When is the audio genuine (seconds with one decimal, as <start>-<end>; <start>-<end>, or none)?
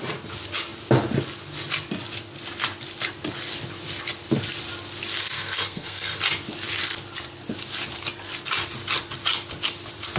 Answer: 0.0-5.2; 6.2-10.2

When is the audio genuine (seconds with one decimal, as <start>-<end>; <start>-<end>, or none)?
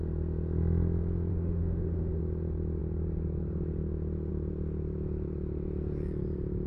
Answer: 0.0-1.3; 2.2-6.7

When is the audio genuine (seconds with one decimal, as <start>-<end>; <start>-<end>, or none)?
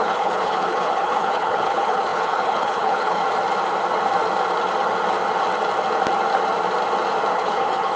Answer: 3.2-7.3